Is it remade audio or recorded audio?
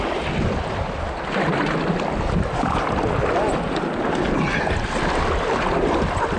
recorded